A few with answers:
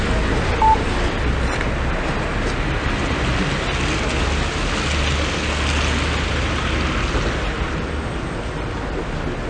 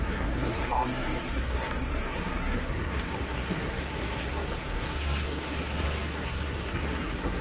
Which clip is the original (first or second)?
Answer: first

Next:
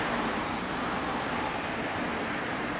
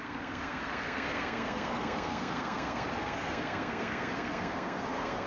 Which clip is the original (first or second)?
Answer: first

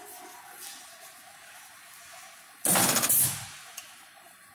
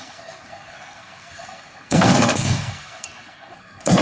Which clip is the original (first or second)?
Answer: first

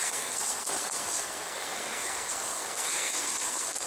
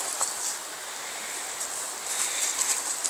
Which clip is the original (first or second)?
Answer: second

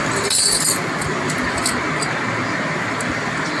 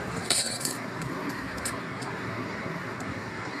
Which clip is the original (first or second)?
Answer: first